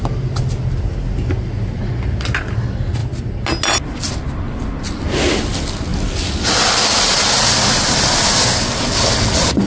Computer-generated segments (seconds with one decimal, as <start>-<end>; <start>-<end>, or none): none